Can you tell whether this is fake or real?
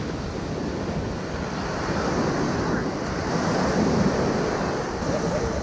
real